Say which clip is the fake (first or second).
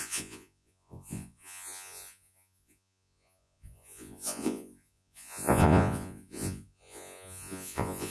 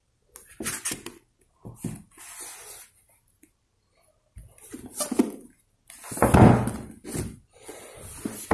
first